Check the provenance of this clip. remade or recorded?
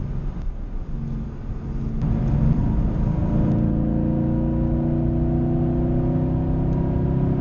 recorded